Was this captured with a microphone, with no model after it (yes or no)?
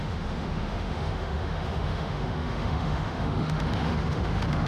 no